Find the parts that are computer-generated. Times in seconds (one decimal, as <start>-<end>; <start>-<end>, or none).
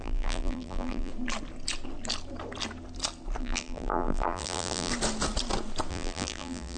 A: 0.0-1.1; 3.4-4.9; 5.9-6.8